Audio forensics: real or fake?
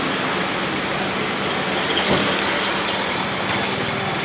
real